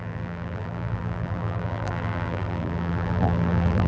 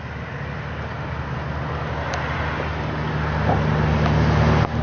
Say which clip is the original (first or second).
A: second